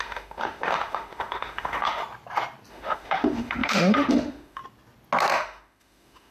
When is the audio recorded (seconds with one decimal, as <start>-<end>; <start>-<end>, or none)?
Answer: 2.0-2.7; 4.6-5.3